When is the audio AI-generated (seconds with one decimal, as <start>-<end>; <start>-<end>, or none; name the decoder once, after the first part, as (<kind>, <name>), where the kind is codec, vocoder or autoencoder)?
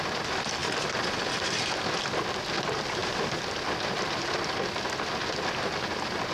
none